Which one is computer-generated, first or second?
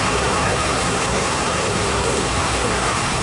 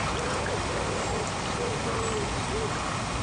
first